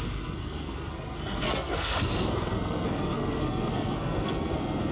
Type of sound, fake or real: fake